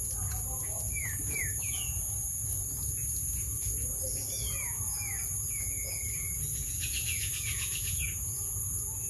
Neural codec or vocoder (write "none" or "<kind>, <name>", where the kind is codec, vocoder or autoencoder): vocoder, Vocos